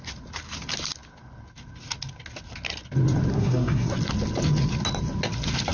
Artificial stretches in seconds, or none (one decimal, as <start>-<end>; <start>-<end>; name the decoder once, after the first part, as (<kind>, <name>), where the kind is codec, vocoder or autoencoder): 3.3-3.9 (codec, SNAC)